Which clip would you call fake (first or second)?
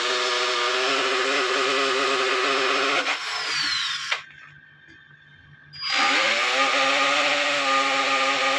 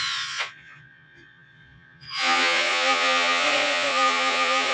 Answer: second